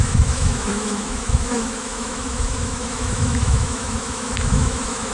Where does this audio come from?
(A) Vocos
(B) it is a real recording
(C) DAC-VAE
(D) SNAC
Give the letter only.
C